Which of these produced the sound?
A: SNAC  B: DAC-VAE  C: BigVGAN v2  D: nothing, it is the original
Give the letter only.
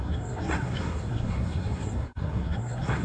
A